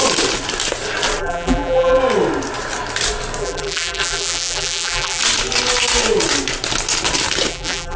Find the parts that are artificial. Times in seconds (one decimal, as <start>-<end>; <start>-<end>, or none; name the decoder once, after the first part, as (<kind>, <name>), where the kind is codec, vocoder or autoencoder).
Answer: 1.2-2.0 (vocoder, BigVGAN v2); 3.4-5.2; 7.5-8.0